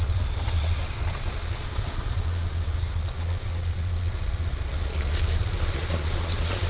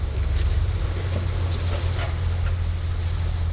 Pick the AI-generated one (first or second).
first